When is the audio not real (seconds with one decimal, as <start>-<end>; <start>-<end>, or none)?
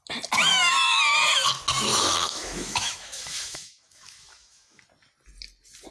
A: 0.5-1.0; 1.9-4.8